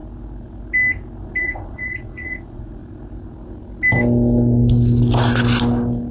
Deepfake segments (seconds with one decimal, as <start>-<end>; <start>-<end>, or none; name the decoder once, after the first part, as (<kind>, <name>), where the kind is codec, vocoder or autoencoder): 1.4-2.8 (vocoder, Vocos)